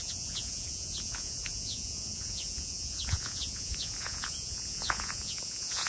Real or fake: fake